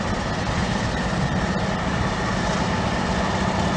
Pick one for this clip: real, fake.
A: real